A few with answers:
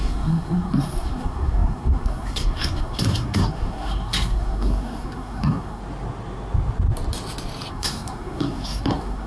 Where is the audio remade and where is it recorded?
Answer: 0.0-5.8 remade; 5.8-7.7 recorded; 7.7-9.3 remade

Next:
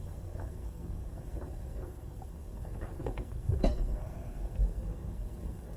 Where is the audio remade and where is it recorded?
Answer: 0.0-5.8 remade

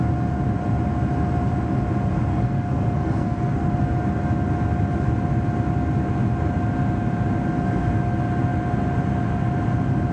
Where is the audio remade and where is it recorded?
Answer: 0.0-2.3 recorded; 2.3-3.8 remade; 3.8-10.1 recorded

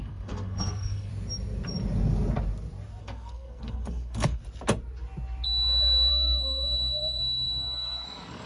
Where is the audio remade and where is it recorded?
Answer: 0.0-1.1 remade; 1.1-3.0 recorded; 3.0-4.4 remade; 4.4-6.1 recorded; 6.1-8.5 remade

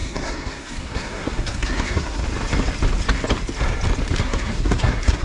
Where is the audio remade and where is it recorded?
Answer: 0.0-2.2 remade; 2.2-4.2 recorded; 4.2-5.2 remade